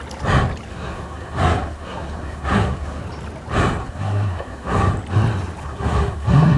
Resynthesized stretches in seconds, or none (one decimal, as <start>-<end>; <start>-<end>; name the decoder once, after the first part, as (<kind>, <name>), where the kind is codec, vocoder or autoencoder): 0.7-3.0 (codec, SNAC); 3.8-4.9; 5.6-6.6